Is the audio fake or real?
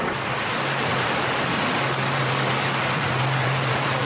fake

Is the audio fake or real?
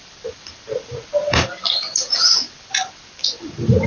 fake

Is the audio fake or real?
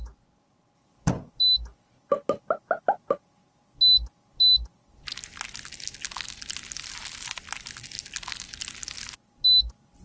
real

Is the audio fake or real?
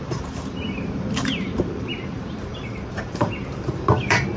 fake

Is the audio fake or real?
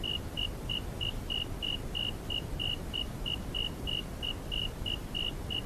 fake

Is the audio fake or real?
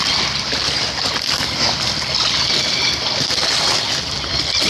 real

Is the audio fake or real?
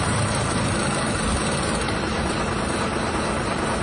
real